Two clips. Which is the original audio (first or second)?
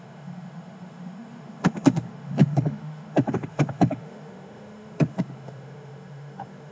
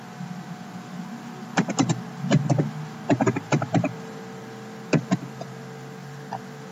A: second